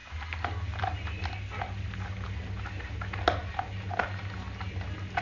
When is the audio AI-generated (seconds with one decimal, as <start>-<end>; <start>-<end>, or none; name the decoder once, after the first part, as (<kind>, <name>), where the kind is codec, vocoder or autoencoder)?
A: none